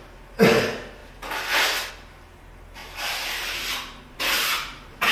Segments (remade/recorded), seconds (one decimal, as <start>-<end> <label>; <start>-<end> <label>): 0.0-2.8 recorded; 2.8-5.1 remade